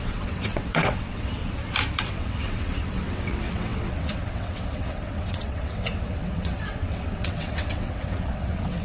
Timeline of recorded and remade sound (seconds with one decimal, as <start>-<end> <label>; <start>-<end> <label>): 0.0-1.4 remade; 1.4-2.0 recorded; 2.0-8.8 remade

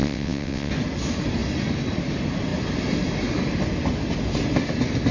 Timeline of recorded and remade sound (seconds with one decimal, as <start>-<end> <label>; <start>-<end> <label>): 0.0-0.7 remade; 0.7-5.1 recorded